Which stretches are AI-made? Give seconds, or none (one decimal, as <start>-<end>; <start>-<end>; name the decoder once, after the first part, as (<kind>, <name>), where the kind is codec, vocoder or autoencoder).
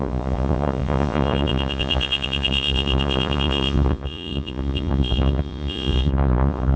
0.0-6.8 (vocoder, Vocos)